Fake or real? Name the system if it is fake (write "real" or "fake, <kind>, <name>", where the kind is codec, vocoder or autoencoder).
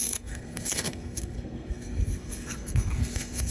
fake, codec, SNAC